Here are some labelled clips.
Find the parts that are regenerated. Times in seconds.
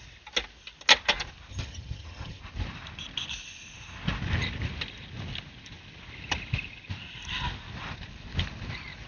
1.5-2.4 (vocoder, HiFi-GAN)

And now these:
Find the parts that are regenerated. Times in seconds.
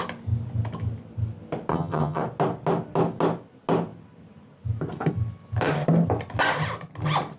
1.7-2.2 (vocoder, HiFi-GAN)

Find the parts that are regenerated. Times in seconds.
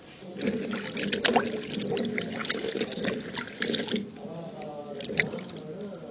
none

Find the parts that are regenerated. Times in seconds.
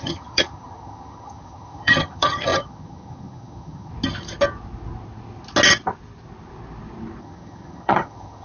0.0-3.9 (vocoder, HiFi-GAN); 7.2-8.4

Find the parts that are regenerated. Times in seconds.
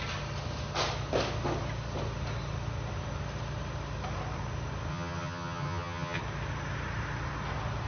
4.9-6.2 (vocoder, HiFi-GAN)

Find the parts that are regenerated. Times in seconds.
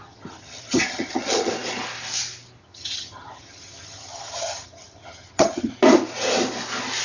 0.0-1.5 (vocoder, HiFi-GAN); 2.6-5.7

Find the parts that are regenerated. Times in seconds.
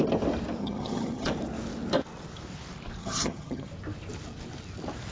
0.6-1.3 (vocoder, HiFi-GAN); 3.0-3.7